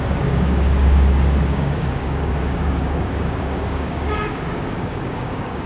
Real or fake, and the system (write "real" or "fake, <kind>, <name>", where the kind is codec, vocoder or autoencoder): fake, codec, DAC